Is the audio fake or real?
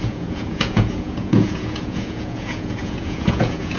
fake